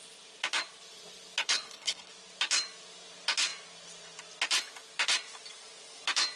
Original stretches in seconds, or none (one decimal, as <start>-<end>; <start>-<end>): 0.0-1.4; 2.1-6.4

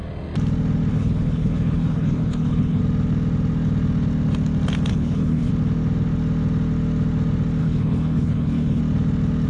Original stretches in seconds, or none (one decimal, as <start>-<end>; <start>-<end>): 0.0-0.9; 2.8-4.9; 5.5-7.6; 8.8-9.5

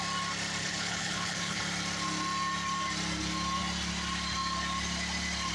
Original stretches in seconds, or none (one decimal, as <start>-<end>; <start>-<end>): 0.0-0.6; 1.6-5.5

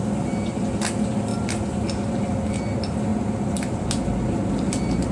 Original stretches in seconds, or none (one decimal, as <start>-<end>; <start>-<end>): 0.0-5.1

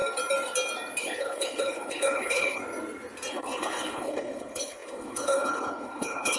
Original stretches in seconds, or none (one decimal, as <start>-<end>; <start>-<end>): 0.0-1.0; 2.6-3.3

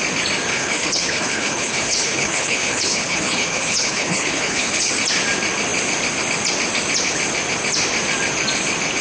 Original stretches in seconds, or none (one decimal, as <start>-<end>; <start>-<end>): 0.0-0.5; 4.9-9.0